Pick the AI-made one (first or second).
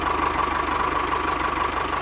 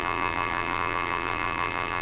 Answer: second